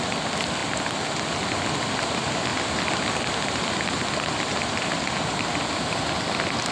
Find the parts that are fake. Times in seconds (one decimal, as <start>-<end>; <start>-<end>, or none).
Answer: none